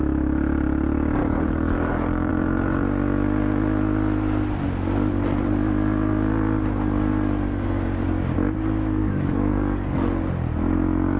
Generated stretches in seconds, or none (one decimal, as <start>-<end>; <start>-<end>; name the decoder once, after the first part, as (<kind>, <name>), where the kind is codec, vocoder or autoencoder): 1.2-2.3 (codec, DAC); 9.0-10.1